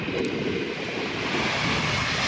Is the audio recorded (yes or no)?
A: yes